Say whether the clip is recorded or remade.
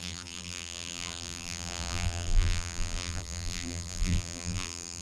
remade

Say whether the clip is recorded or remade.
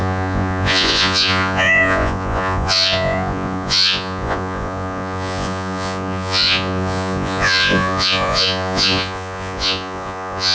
remade